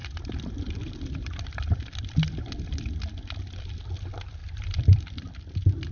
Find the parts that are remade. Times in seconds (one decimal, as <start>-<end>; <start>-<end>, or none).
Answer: 0.0-2.5; 4.4-5.5